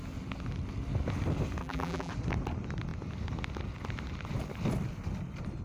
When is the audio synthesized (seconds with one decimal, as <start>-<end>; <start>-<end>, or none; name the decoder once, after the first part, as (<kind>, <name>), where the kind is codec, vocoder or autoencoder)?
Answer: 1.6-2.1 (vocoder, BigVGAN v2)